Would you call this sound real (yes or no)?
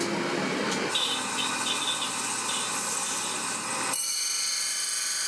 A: yes